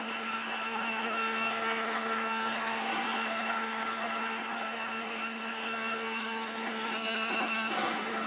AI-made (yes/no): yes